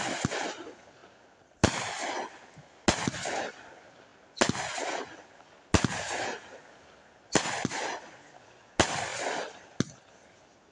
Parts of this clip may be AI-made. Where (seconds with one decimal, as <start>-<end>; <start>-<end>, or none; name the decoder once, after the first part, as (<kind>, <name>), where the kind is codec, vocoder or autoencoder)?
none